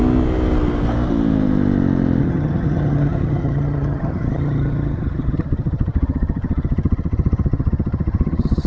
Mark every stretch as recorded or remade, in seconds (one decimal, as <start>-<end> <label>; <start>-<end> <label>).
0.0-2.2 recorded; 2.2-8.7 remade